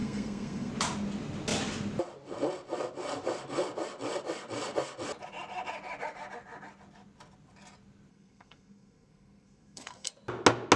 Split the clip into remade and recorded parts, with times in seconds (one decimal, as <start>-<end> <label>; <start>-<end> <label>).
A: 0.0-0.7 remade; 0.7-8.1 recorded; 8.1-10.1 remade; 10.1-10.8 recorded